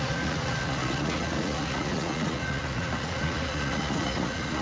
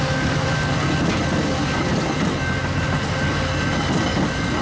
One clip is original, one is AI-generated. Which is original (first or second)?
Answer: second